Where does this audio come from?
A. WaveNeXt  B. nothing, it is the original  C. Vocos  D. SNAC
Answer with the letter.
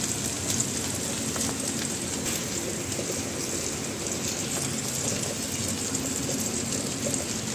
B